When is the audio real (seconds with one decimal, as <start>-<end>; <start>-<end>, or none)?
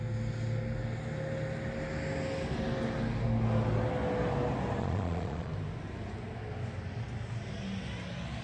0.0-4.8; 5.5-8.4